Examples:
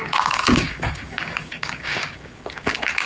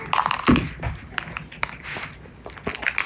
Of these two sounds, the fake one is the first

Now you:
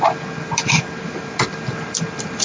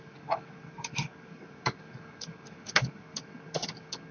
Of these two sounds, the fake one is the second